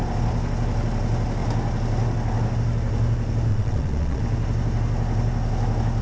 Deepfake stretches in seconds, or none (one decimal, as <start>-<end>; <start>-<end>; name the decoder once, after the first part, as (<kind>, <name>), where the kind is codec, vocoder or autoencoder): 3.5-4.2 (vocoder, Vocos)

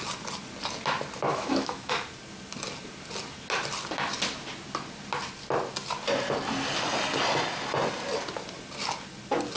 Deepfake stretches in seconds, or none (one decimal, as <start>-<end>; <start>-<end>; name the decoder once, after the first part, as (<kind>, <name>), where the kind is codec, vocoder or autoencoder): 1.3-1.9 (autoencoder, DAC-VAE)